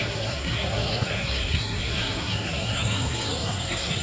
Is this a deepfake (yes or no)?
yes